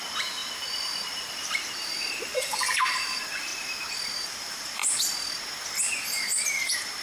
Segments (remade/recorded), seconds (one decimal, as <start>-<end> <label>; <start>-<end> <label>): 0.0-3.5 remade; 3.5-4.1 recorded; 4.1-4.8 remade; 4.8-5.8 recorded; 5.8-7.0 remade

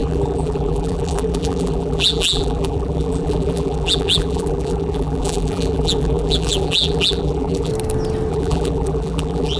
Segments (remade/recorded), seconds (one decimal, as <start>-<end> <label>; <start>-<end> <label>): 0.0-7.7 remade; 7.7-8.3 recorded; 8.3-9.6 remade

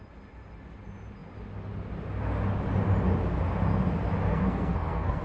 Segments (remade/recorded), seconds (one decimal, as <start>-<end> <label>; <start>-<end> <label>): 0.0-4.3 recorded; 4.3-5.2 remade